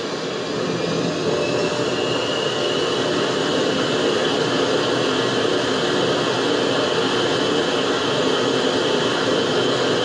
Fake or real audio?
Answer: real